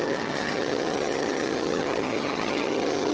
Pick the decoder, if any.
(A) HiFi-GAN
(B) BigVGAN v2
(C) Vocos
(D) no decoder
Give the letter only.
A